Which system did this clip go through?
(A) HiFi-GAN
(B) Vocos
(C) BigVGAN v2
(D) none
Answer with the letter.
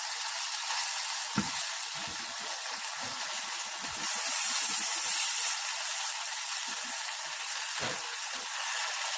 D